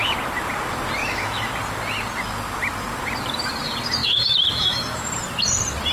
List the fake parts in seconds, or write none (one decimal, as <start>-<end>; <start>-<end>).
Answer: 1.0-1.5; 4.0-5.0